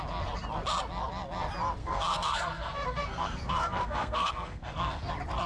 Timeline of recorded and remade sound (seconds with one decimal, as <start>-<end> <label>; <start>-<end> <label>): 0.0-1.8 recorded; 1.8-5.1 remade; 5.1-5.5 recorded